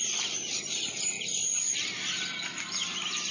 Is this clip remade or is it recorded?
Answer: remade